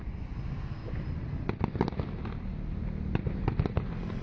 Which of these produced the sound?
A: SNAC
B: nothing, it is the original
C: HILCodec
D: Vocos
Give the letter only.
B